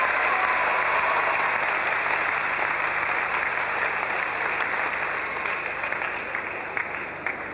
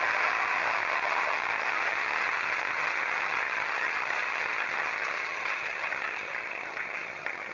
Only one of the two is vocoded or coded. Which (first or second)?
second